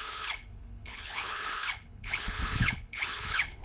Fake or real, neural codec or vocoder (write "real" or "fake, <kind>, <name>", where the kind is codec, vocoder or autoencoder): fake, codec, HILCodec